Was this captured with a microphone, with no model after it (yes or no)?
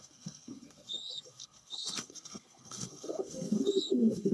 no